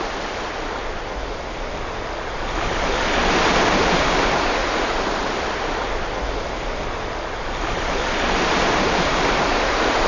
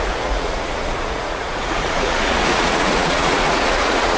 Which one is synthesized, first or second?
second